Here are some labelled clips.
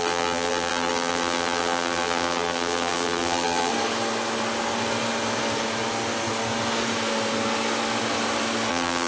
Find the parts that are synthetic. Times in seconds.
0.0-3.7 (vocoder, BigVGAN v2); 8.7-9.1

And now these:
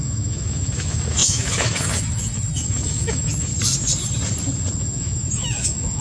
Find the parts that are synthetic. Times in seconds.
0.0-3.5 (autoencoder, DAC-VAE); 4.8-6.0

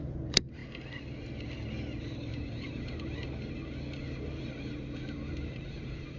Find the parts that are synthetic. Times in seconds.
0.0-0.6 (vocoder, BigVGAN v2); 2.0-3.2; 4.4-6.2

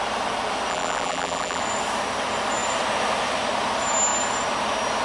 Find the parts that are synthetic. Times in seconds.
0.7-1.6 (vocoder, BigVGAN v2)

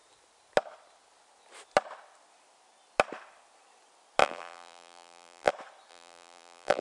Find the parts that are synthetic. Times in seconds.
4.2-5.5 (vocoder, BigVGAN v2); 5.9-6.8